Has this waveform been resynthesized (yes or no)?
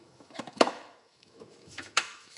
yes